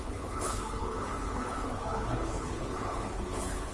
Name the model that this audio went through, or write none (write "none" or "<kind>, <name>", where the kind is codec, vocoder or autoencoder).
codec, HILCodec